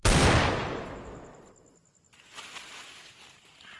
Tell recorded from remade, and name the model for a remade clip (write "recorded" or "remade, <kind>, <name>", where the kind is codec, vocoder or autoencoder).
recorded